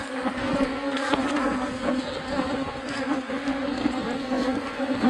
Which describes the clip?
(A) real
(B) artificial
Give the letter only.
B